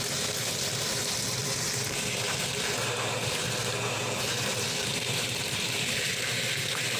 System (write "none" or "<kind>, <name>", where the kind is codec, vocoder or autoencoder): none